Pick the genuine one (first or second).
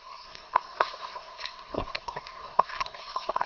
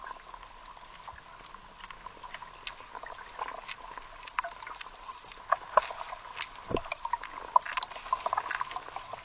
second